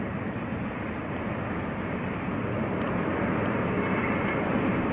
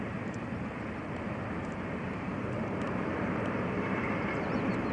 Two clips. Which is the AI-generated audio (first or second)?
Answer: second